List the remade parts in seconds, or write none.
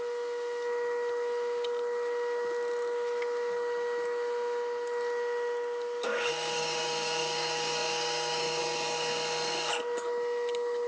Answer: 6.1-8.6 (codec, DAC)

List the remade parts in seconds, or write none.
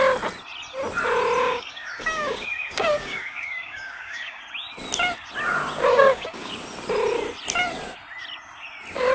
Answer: 1.4-4.4 (codec, DAC); 5.9-6.5